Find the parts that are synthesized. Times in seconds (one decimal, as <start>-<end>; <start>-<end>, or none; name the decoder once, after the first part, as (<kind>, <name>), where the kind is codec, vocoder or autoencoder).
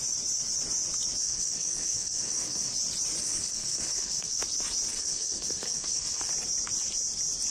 1.2-2.7 (codec, SNAC); 3.2-4.4; 4.9-6.3